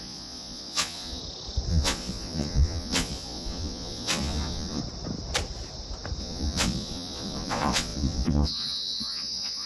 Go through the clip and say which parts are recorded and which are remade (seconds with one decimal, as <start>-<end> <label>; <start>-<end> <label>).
0.0-1.2 remade; 1.2-1.7 recorded; 1.7-4.8 remade; 4.8-6.2 recorded; 6.2-9.7 remade